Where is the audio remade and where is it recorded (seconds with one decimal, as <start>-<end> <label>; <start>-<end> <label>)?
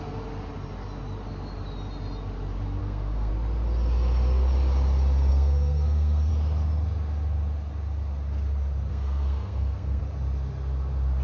0.0-2.8 recorded; 2.8-3.3 remade; 3.3-5.3 recorded; 5.3-6.3 remade; 6.3-8.9 recorded; 8.9-10.0 remade; 10.0-11.2 recorded